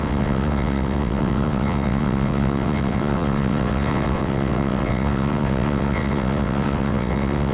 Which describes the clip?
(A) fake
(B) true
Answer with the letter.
A